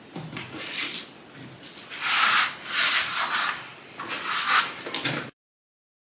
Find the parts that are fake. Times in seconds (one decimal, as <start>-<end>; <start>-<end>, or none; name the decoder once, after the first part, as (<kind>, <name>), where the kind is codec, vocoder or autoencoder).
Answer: 0.0-6.0 (vocoder, BigVGAN v2)